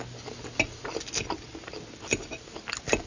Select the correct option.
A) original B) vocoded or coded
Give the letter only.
A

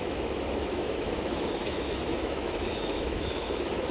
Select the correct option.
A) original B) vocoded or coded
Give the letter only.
B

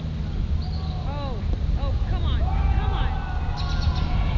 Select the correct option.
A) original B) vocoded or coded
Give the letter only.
A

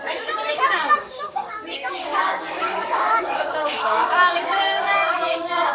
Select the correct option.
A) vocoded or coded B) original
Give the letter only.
A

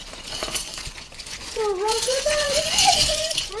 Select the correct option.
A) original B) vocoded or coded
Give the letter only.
B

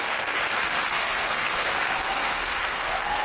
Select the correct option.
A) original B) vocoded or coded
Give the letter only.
B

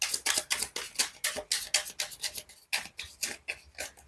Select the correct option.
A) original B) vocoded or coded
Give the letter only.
A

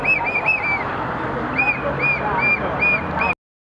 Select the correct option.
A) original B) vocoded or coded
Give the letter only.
A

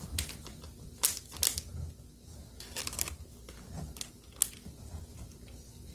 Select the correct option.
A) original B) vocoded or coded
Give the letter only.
A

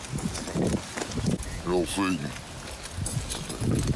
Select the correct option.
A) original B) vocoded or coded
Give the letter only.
A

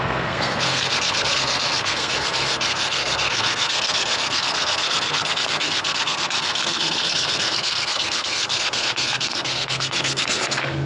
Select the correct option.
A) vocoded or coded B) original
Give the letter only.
A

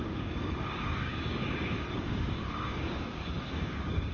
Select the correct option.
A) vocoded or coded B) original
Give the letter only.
A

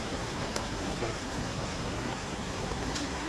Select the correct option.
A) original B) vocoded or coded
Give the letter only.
B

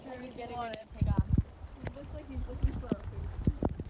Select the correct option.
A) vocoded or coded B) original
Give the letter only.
B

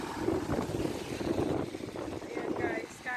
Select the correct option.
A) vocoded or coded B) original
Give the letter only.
A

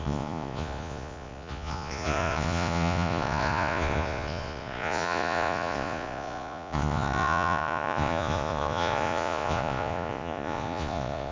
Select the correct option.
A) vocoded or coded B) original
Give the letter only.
A